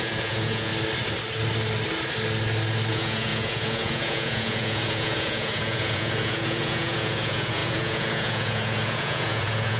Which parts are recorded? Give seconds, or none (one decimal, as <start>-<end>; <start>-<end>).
0.7-2.9